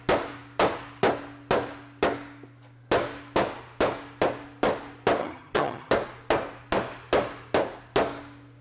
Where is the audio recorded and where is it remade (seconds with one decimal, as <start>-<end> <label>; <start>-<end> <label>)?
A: 0.0-5.2 recorded; 5.2-5.9 remade; 5.9-8.6 recorded

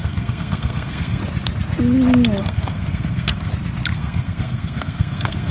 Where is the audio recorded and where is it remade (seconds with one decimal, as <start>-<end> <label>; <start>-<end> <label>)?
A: 0.0-1.2 remade; 1.2-2.4 recorded; 2.4-3.5 remade; 3.5-3.9 recorded; 3.9-5.5 remade

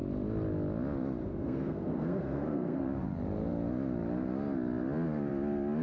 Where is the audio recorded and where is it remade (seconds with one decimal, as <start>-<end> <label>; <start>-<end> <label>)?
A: 0.0-1.2 recorded; 1.2-2.8 remade; 2.8-5.8 recorded